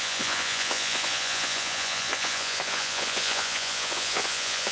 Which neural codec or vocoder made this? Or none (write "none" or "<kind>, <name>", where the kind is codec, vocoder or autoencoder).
vocoder, Vocos